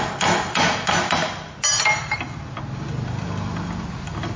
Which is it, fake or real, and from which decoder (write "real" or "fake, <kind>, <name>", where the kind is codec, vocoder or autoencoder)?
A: real